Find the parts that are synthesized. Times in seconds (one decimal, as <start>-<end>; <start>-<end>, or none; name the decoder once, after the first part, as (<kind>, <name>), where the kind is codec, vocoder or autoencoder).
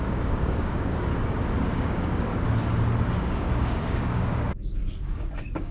0.0-1.1 (codec, DAC); 1.6-2.3; 3.2-5.7